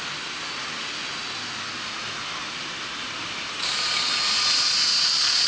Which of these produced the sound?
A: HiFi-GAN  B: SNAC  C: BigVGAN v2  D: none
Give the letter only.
D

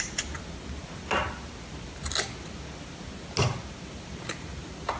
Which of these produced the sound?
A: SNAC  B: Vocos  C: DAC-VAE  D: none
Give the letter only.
D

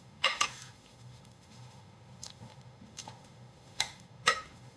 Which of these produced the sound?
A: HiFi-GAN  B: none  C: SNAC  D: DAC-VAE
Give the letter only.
D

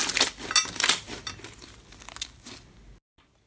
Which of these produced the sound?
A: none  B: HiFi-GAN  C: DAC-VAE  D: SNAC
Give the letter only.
A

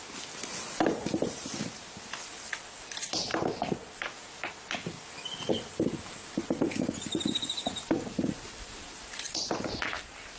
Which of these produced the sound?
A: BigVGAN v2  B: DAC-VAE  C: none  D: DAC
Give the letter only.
C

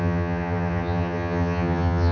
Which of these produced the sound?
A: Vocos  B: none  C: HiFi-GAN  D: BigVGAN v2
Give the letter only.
C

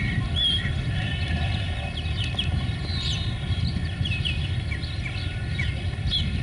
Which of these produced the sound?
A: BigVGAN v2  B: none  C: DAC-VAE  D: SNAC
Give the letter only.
B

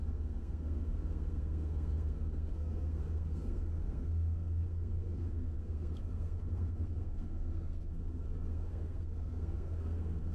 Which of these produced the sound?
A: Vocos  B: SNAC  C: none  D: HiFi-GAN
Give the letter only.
B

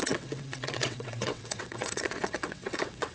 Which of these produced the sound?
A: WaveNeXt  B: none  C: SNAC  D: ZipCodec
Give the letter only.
A